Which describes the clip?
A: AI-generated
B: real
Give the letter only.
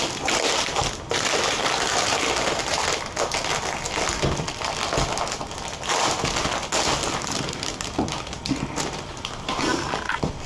B